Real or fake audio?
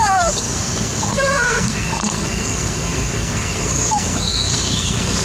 fake